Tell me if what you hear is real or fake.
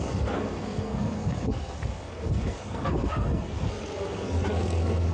fake